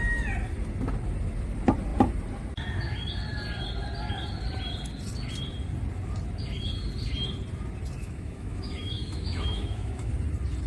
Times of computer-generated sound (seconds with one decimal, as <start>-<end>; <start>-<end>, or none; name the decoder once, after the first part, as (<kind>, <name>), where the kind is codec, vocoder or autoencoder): 8.0-10.1 (autoencoder, DAC-VAE)